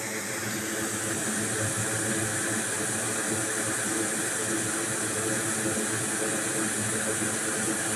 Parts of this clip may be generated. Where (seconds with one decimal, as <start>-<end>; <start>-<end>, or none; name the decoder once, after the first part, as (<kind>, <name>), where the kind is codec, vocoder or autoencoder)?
none